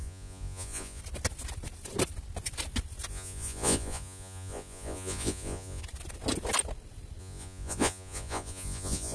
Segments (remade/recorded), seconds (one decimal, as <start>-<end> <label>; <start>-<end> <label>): 0.0-1.0 remade; 1.0-3.1 recorded; 3.1-5.8 remade; 5.8-7.2 recorded; 7.2-9.1 remade